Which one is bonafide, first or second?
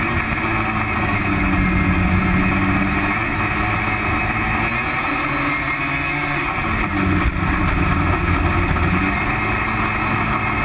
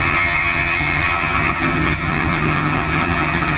first